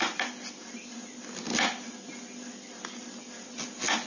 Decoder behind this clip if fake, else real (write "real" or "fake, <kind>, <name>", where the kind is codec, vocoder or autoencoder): real